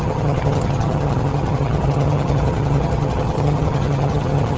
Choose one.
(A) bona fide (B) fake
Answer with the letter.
B